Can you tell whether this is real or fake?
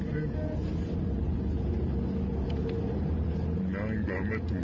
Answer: real